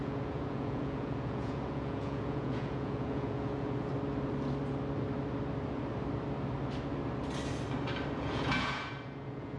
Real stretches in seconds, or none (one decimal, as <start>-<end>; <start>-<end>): 3.9-8.1